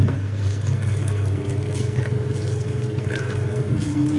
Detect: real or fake fake